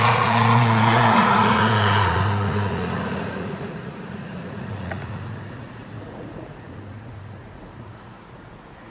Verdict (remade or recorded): remade